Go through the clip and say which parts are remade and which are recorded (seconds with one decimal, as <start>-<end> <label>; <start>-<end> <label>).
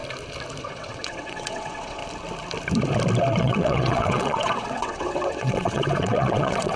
0.0-0.6 recorded; 0.6-2.0 remade; 2.0-3.4 recorded; 3.4-6.8 remade